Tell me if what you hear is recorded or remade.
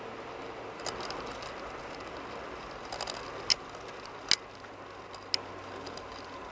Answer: recorded